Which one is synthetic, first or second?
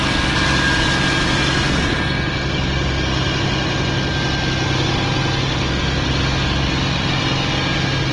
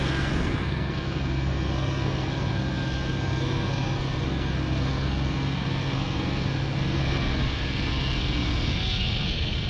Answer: second